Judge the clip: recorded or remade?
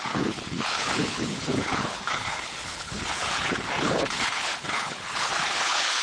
remade